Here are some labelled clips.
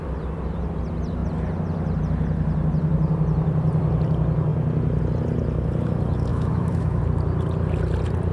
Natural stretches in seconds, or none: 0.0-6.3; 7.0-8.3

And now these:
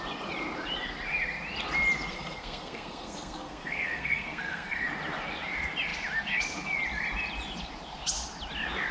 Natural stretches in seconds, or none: 0.0-2.1; 4.8-8.9

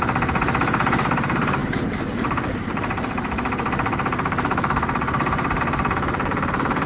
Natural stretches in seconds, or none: none

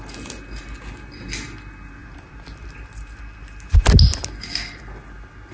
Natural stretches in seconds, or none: 0.0-2.0; 4.3-5.5

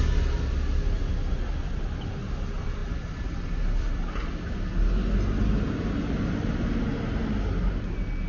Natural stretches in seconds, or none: 0.0-8.3